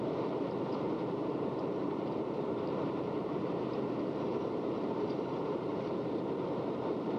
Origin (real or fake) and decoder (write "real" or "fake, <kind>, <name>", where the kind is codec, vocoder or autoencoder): fake, vocoder, BigVGAN v2